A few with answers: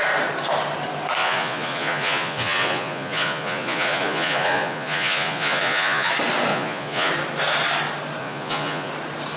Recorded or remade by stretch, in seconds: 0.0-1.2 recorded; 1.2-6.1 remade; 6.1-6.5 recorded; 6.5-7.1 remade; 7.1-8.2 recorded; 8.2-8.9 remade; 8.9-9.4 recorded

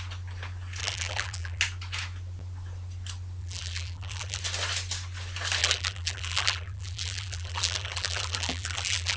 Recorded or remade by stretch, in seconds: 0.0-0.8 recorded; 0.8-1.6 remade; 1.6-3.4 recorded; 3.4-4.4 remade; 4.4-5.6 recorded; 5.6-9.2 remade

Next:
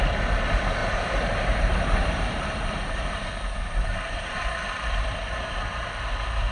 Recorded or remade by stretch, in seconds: 0.0-0.8 recorded; 0.8-4.5 remade; 4.5-6.5 recorded

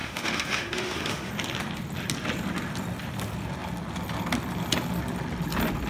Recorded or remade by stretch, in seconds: 0.0-1.3 remade; 1.3-5.9 recorded

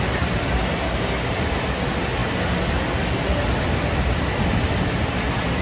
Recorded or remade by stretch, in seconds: 0.0-5.6 recorded

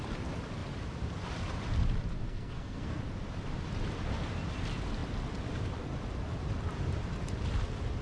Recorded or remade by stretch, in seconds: 0.0-2.2 recorded; 2.2-3.0 remade; 3.0-8.0 recorded